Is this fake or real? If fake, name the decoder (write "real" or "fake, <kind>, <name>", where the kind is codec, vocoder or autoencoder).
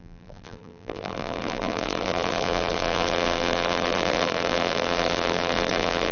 fake, vocoder, BigVGAN v2